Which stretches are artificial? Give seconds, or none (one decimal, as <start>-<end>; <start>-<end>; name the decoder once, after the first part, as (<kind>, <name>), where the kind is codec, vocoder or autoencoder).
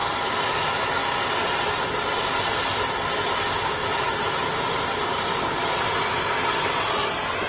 3.8-6.4 (vocoder, BigVGAN v2)